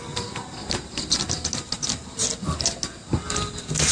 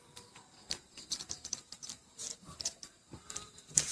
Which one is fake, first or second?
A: second